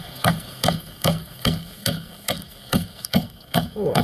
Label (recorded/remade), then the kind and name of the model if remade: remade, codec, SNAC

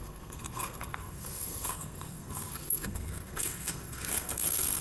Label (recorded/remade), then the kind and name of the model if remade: remade, codec, SNAC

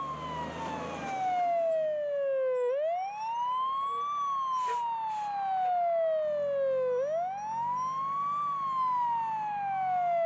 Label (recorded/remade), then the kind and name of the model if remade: recorded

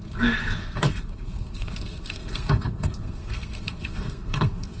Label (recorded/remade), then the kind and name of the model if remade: remade, codec, SNAC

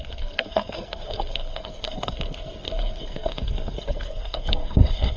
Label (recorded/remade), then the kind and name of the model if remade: remade, codec, SNAC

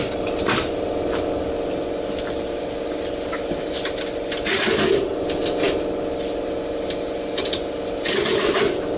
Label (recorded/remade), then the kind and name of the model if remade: recorded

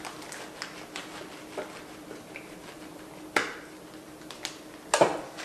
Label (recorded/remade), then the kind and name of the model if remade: recorded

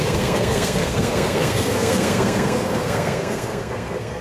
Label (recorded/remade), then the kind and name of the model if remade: remade, codec, SNAC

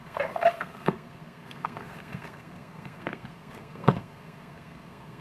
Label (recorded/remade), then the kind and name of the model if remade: remade, codec, SNAC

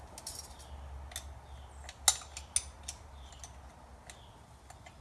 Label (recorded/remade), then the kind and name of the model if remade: recorded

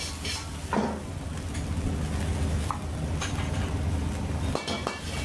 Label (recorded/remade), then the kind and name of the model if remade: recorded